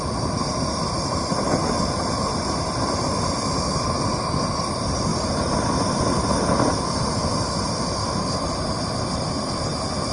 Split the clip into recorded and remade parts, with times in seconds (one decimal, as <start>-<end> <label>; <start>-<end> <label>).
0.0-10.1 recorded